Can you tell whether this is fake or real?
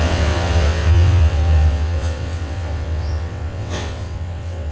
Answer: fake